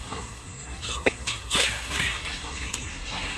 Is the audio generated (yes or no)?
yes